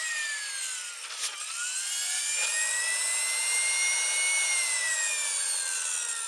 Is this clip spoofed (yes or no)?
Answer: no